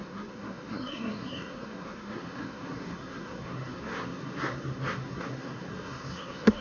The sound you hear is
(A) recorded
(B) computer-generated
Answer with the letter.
B